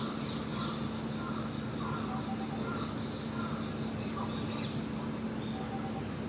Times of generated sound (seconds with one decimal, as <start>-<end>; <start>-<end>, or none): none